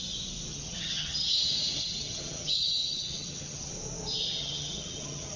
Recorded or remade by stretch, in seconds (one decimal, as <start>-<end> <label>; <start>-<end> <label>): 0.0-0.5 recorded; 0.5-3.7 remade; 3.7-4.4 recorded; 4.4-5.4 remade

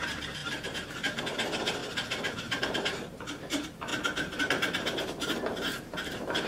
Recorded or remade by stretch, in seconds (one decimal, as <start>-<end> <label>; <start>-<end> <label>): 0.0-1.8 remade; 1.8-2.6 recorded; 2.6-3.9 remade; 3.9-4.4 recorded; 4.4-6.5 remade

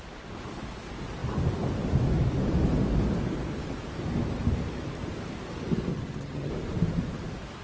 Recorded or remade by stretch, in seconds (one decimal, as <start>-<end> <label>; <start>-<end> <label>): 0.0-5.9 recorded; 5.9-6.5 remade; 6.5-7.6 recorded